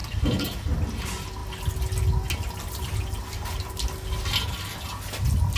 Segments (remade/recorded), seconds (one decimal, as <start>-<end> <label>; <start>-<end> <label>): 0.0-0.5 remade; 0.5-5.6 recorded